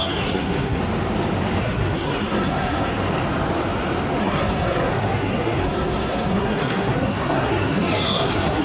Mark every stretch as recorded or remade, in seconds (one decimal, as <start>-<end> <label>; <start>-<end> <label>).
0.0-0.8 remade; 0.8-1.6 recorded; 1.6-2.9 remade; 2.9-4.2 recorded; 4.2-8.6 remade